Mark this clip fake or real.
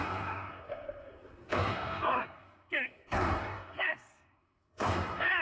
fake